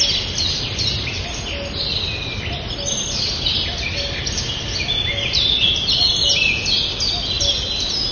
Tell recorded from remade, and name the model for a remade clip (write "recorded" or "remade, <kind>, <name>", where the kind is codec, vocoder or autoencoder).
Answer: recorded